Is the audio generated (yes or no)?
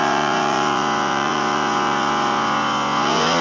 yes